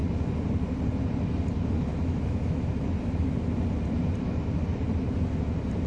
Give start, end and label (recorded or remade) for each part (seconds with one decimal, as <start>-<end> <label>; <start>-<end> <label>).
0.0-1.9 recorded; 1.9-2.8 remade; 2.8-5.9 recorded